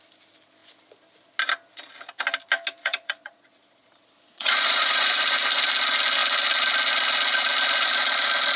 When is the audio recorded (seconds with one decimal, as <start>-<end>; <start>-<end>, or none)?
0.0-2.8; 5.1-8.6